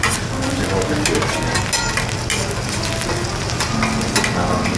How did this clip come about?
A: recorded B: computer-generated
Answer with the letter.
A